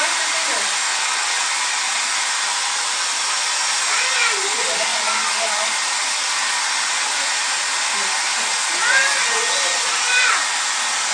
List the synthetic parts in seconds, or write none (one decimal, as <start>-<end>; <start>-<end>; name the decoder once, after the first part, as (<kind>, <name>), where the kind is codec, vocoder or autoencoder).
0.9-1.5 (vocoder, WaveNeXt)